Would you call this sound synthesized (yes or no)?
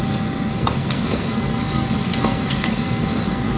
yes